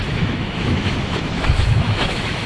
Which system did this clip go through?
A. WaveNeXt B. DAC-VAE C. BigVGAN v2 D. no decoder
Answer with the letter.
B